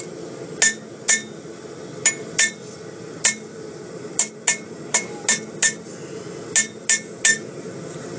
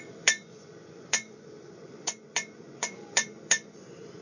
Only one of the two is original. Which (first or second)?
first